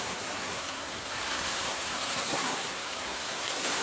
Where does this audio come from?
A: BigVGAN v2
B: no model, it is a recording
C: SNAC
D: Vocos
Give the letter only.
C